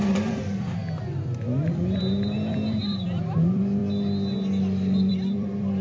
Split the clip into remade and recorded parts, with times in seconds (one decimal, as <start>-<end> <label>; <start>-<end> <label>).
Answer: 0.0-0.8 remade; 0.8-2.8 recorded; 2.8-3.8 remade; 3.8-5.1 recorded; 5.1-5.8 remade